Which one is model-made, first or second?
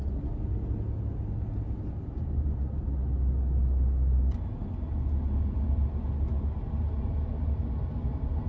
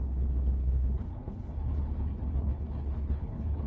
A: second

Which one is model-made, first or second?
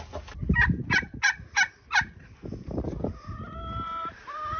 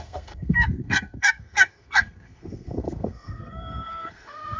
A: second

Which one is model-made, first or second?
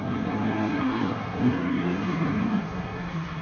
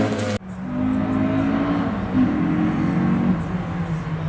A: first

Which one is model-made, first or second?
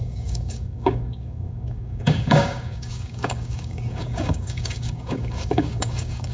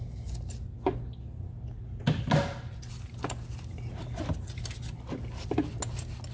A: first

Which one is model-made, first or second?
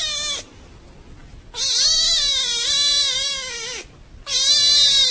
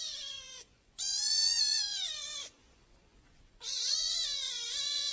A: second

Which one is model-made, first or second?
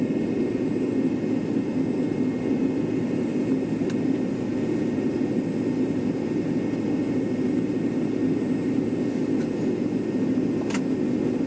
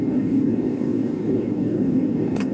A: second